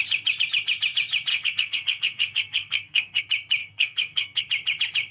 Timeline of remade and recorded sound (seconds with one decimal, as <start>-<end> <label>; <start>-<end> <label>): 0.0-1.3 recorded; 1.3-3.2 remade; 3.2-3.6 recorded; 3.6-4.4 remade; 4.4-5.1 recorded